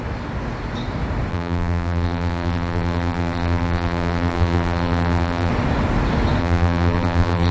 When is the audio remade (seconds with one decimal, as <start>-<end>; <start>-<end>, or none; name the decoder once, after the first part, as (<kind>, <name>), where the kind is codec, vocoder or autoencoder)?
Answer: 1.3-5.5 (vocoder, BigVGAN v2); 6.4-7.5